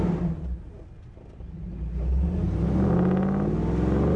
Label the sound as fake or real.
real